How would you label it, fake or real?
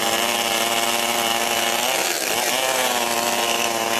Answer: real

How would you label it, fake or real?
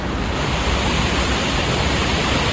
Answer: real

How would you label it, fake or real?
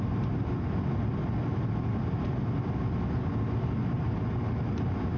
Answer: real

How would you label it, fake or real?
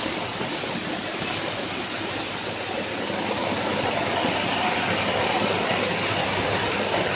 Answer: real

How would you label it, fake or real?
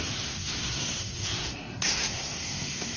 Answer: fake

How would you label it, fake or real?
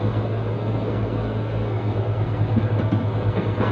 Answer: fake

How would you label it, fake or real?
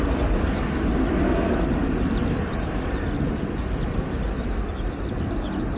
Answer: real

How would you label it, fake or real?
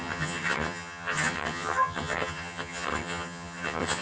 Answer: fake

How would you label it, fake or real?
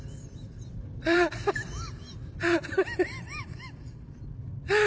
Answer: fake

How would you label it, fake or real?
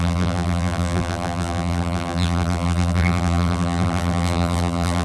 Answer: fake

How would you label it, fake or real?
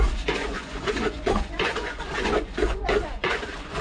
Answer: fake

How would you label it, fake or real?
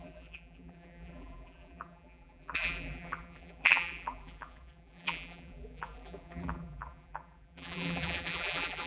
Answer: fake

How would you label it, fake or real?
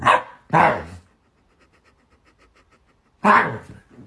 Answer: real